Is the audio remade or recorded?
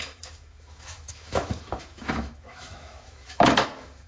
remade